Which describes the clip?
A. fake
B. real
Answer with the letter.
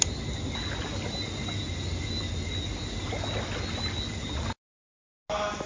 B